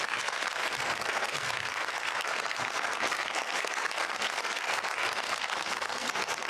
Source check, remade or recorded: remade